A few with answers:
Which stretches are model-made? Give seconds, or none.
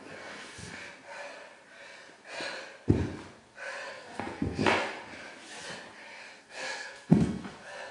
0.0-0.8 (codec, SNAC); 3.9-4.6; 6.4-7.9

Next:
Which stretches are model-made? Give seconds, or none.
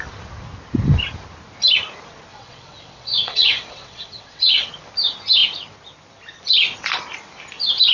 2.3-4.7 (vocoder, WaveNeXt)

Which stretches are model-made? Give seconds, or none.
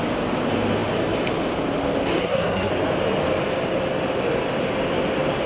2.2-2.7 (codec, SNAC)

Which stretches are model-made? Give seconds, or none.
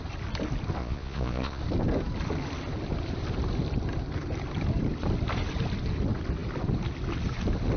0.8-1.6 (vocoder, Vocos)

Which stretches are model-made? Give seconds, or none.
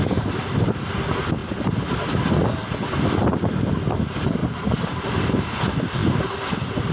0.0-0.7 (vocoder, BigVGAN v2); 4.4-5.5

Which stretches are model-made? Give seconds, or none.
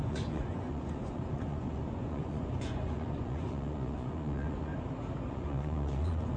0.0-4.7 (vocoder, Vocos); 5.3-6.4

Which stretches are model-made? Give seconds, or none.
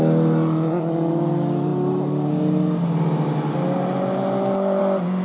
none